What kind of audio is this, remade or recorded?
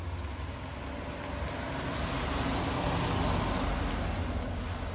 recorded